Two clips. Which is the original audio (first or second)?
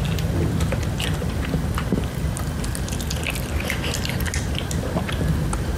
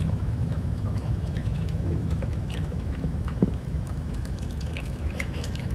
first